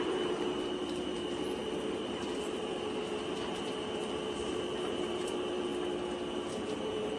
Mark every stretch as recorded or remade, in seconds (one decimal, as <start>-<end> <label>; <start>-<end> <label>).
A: 0.0-5.7 remade; 5.7-6.3 recorded; 6.3-7.2 remade